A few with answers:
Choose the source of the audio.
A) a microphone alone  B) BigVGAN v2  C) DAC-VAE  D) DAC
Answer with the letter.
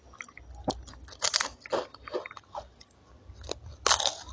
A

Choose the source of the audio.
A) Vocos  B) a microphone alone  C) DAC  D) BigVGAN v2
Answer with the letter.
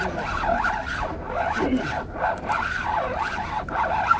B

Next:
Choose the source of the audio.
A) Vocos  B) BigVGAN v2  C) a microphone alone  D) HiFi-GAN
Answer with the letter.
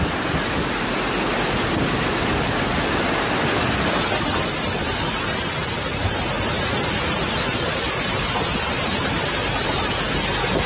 C